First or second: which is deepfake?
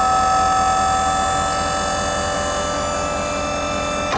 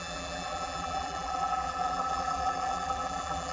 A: second